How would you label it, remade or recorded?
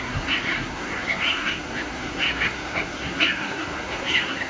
remade